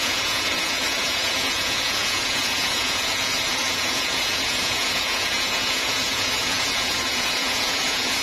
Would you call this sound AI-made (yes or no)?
yes